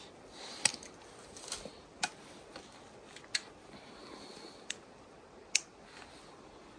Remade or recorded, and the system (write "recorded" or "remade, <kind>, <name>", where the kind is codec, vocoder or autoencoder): recorded